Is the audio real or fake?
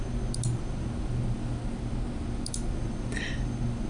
real